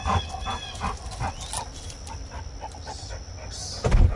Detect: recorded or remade recorded